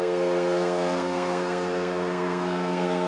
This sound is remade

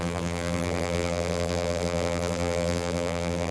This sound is remade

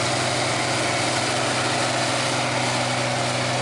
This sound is recorded